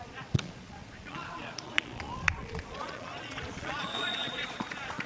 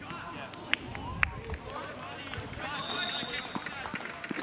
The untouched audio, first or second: second